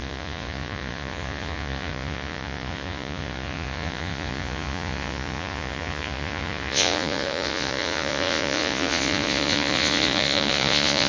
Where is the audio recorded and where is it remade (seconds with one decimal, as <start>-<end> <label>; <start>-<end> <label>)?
0.0-11.1 remade